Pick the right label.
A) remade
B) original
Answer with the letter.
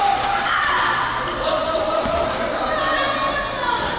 B